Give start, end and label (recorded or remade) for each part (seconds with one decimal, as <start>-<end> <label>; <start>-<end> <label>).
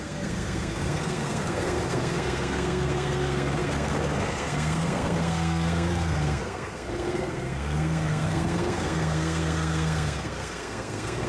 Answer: 0.0-11.3 remade